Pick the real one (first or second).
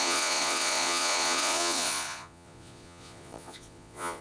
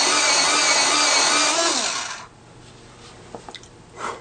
second